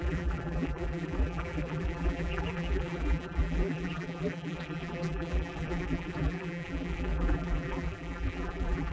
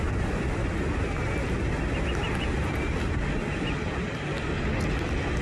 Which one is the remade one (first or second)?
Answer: first